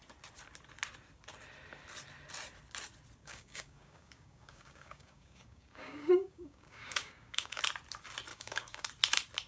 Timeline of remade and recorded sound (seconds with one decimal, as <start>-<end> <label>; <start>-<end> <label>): 0.0-3.2 recorded; 3.2-7.6 remade; 7.6-8.3 recorded; 8.3-8.9 remade; 8.9-9.5 recorded